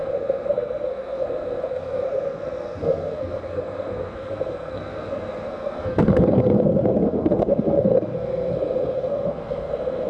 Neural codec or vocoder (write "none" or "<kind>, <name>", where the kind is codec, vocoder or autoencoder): codec, SNAC